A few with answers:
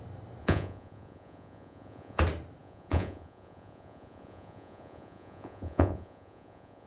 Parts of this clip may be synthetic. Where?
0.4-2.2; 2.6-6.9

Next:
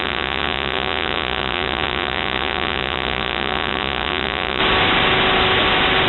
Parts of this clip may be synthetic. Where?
0.0-4.6

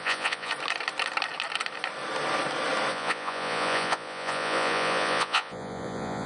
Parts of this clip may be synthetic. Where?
0.0-0.5; 2.9-6.3

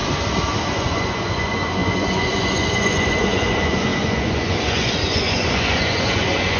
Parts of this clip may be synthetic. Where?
0.7-6.6

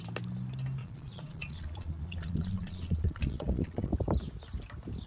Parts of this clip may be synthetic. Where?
0.8-3.9

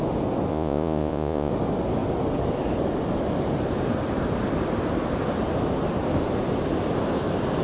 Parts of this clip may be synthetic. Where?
0.5-1.5

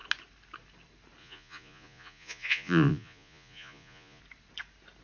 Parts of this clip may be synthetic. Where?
1.2-4.2